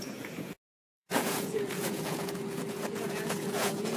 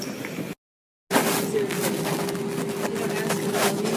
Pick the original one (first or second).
second